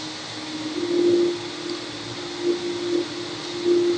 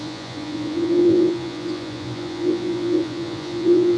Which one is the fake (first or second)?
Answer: second